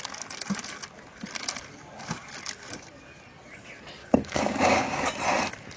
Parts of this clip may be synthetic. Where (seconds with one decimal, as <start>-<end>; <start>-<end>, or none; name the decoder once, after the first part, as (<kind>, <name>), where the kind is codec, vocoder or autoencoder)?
4.0-5.1 (codec, DAC)